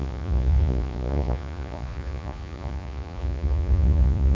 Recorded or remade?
remade